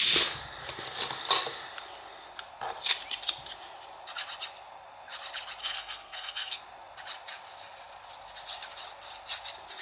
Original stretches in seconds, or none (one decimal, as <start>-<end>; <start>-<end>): 0.0-5.6; 6.6-9.8